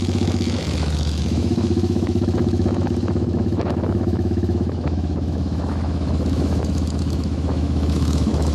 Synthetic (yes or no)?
yes